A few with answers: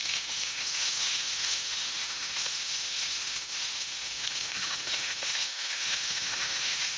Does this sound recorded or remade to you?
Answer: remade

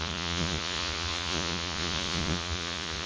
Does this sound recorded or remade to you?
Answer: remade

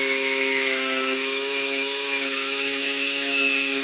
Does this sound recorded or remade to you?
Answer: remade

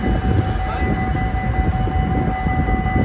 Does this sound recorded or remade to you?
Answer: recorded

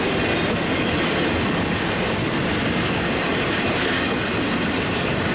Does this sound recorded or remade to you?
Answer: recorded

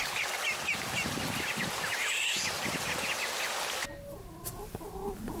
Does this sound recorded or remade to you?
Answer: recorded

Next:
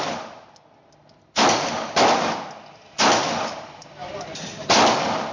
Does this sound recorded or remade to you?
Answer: recorded